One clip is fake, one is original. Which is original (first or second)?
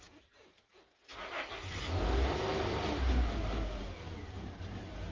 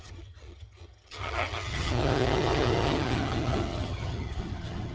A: first